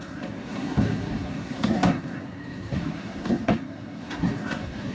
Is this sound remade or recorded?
remade